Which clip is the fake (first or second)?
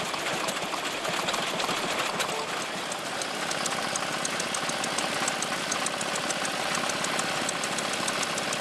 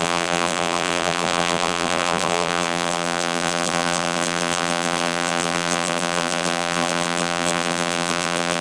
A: second